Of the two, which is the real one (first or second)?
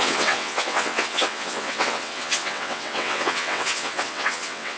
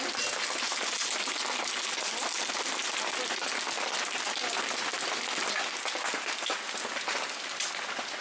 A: second